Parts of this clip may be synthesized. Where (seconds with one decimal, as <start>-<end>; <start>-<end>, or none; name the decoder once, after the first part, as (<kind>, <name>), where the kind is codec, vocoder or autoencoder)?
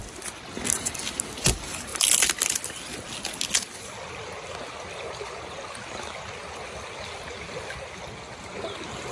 none